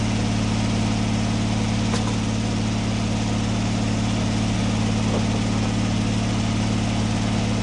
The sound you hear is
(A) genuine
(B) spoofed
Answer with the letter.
A